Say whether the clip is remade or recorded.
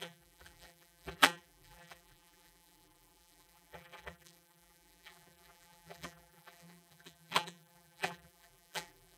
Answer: remade